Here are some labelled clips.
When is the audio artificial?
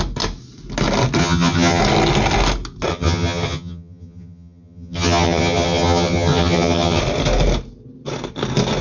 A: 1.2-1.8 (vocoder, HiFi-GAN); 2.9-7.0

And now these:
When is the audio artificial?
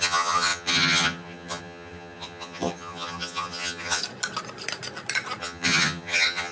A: 0.0-4.0 (vocoder, HiFi-GAN); 5.4-6.5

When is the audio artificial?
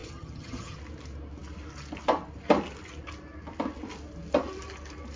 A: 0.0-0.8 (vocoder, HiFi-GAN)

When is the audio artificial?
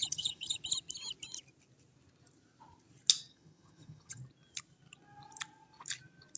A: 0.0-0.6 (vocoder, HiFi-GAN); 3.3-4.2